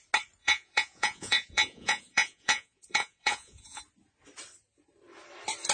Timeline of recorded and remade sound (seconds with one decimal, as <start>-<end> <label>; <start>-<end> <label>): 0.0-0.4 recorded; 0.4-3.8 remade; 3.8-5.7 recorded